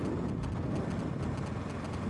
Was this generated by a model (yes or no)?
no